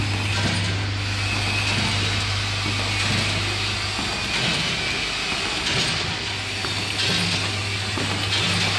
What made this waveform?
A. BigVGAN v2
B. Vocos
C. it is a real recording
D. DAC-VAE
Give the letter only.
C